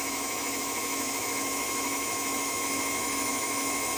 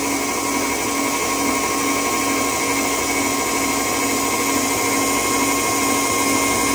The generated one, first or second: first